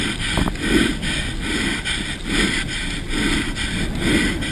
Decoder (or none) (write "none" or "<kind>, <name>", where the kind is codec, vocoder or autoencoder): none